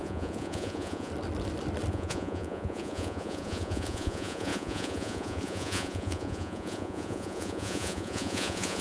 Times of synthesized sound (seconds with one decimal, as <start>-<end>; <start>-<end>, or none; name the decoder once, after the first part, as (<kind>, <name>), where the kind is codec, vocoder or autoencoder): 0.0-1.1 (vocoder, Vocos); 1.9-8.8